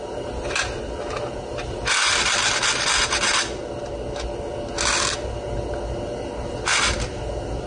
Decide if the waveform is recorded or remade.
recorded